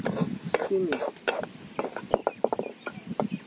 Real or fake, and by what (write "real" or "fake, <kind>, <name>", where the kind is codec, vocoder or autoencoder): real